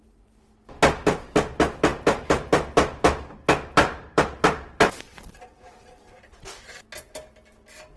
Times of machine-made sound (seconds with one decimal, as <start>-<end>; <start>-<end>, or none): 1.9-6.7